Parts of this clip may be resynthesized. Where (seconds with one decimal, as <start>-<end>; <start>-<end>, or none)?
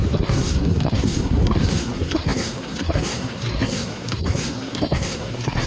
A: 0.0-5.7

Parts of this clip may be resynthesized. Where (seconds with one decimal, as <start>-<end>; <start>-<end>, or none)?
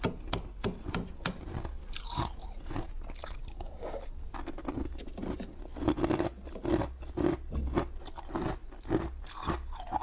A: none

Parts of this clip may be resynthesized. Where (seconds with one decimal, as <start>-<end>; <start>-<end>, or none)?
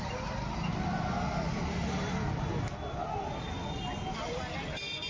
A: none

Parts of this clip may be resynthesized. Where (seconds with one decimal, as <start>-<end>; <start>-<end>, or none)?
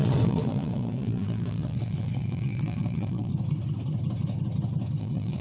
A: 0.0-3.3; 5.0-5.4